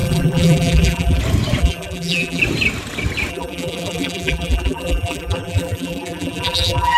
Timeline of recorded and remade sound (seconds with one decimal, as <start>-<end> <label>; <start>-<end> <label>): 0.0-1.2 remade; 1.2-1.6 recorded; 1.6-2.4 remade; 2.4-3.3 recorded; 3.3-7.0 remade